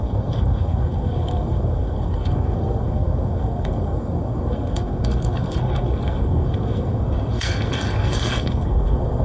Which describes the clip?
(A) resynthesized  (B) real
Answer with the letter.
A